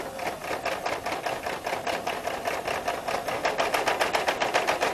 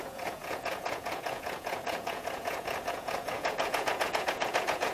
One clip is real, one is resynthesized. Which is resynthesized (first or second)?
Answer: second